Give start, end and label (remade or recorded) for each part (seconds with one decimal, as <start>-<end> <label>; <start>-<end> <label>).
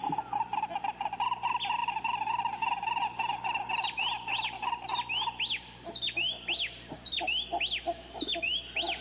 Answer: 0.0-9.0 recorded